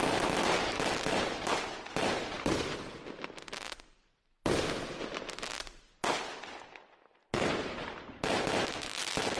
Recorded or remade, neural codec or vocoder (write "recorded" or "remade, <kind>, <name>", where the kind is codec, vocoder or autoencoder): recorded